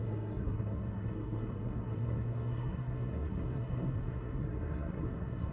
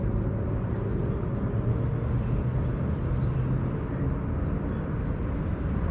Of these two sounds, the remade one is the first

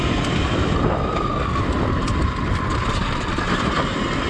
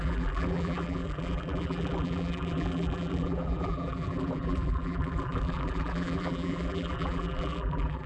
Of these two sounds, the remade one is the second